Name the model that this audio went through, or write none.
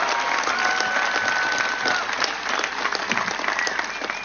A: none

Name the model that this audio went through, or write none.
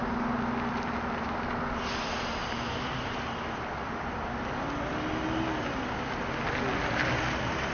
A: none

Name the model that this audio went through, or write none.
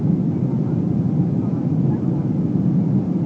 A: none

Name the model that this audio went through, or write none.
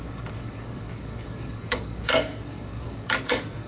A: codec, DAC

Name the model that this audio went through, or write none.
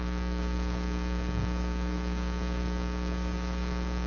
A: codec, DAC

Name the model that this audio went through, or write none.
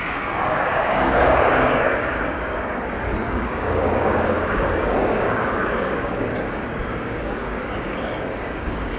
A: codec, DAC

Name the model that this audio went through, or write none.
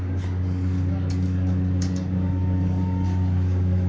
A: codec, DAC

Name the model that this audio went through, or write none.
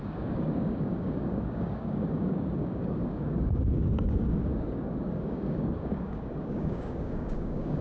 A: codec, DAC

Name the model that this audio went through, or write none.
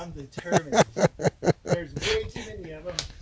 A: none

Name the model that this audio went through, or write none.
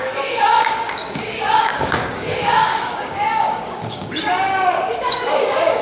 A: codec, DAC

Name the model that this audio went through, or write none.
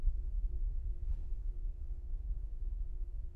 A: codec, DAC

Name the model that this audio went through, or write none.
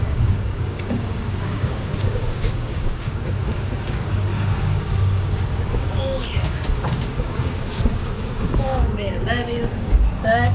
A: codec, DAC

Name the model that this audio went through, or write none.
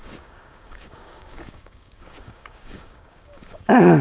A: codec, DAC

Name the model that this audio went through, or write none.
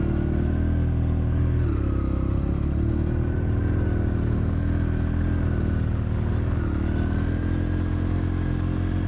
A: none